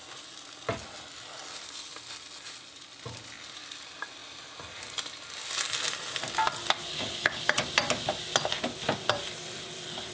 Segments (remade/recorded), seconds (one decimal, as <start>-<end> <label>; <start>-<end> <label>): 0.0-6.9 recorded; 6.9-7.4 remade; 7.4-10.1 recorded